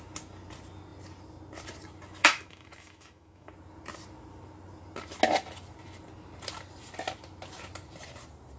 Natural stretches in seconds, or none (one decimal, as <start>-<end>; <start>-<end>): 0.0-2.2; 3.5-8.6